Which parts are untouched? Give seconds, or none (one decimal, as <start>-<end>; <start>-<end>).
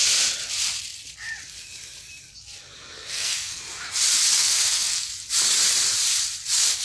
0.0-2.8; 3.6-4.4; 5.1-6.8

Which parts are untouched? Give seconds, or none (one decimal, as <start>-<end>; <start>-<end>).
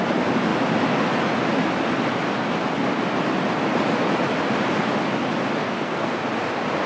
0.0-5.6; 6.2-6.9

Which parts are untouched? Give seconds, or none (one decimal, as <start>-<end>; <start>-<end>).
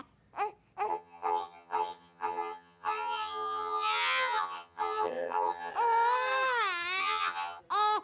0.0-0.9; 5.7-7.0; 7.6-8.0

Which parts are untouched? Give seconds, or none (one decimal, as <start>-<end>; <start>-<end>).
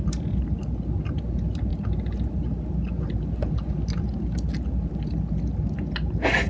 0.0-6.5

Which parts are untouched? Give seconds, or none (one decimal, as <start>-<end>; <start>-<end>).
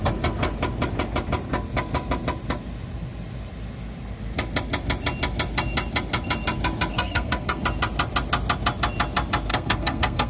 0.0-6.9; 7.6-9.5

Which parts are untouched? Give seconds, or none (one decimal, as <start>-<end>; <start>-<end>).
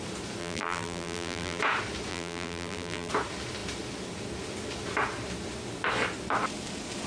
0.0-0.4; 1.6-2.1; 3.1-7.1